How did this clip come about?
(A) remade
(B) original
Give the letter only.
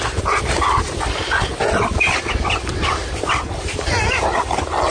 B